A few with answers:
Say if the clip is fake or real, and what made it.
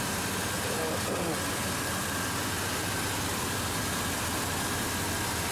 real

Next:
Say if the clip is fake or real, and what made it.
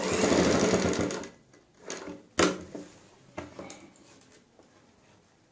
real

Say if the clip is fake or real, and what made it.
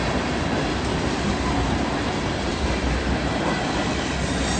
real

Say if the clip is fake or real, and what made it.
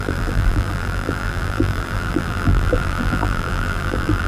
fake, vocoder, BigVGAN v2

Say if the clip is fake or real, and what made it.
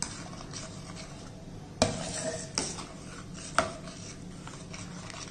real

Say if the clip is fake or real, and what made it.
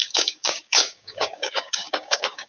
fake, codec, DAC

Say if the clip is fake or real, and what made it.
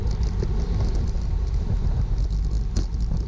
real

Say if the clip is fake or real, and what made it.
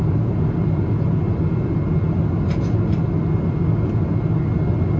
real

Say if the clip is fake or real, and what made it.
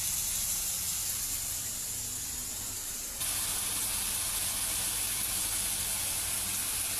real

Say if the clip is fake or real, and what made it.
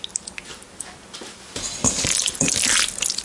real